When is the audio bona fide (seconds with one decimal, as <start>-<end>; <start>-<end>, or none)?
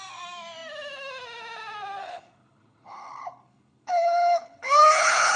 0.0-2.0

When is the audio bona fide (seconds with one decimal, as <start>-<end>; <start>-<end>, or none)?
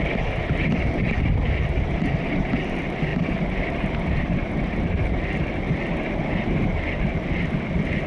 0.0-3.1; 7.0-8.1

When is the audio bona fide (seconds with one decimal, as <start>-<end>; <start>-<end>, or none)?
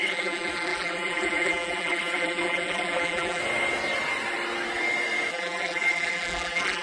3.4-5.3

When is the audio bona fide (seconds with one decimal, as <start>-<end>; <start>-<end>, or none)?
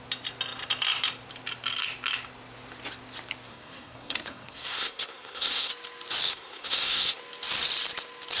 0.0-3.5; 5.7-6.3; 7.2-8.4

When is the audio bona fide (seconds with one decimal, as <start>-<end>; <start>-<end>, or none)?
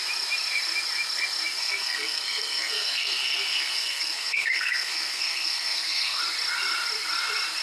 0.0-1.6; 6.2-7.6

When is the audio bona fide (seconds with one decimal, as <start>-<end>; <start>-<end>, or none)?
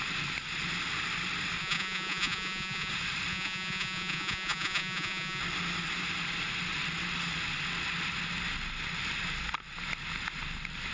0.0-1.6; 2.9-3.3; 5.4-10.9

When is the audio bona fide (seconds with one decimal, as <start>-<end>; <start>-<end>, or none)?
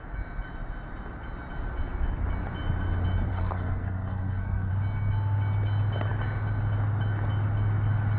0.0-3.3; 4.7-8.2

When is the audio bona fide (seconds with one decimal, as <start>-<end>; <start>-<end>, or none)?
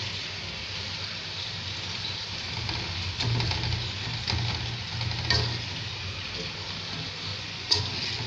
0.0-7.3; 7.8-8.3